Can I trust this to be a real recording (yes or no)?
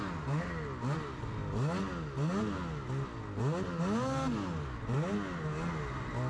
yes